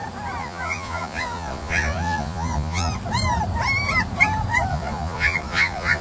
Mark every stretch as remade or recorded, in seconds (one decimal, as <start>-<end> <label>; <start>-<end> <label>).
0.0-0.4 recorded; 0.4-2.9 remade; 2.9-4.7 recorded; 4.7-6.0 remade